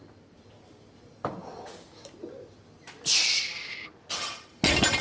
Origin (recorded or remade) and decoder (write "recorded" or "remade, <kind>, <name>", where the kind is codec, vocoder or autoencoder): recorded